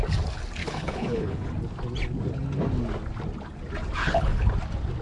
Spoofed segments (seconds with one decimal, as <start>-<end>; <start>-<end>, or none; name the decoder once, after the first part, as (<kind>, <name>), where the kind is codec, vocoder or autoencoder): 0.6-1.5 (codec, HILCodec); 4.0-4.5

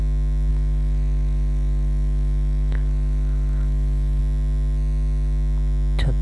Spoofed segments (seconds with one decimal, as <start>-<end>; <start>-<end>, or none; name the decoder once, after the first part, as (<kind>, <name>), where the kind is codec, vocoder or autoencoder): 0.5-4.2 (autoencoder, DAC-VAE)

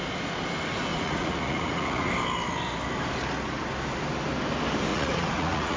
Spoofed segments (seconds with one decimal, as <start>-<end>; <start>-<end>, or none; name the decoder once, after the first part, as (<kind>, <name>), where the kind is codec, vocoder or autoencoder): 0.9-2.1 (vocoder, Vocos); 4.9-5.8